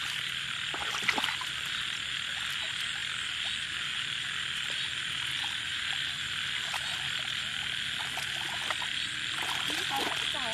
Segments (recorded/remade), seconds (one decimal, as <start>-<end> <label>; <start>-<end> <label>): 0.0-10.5 recorded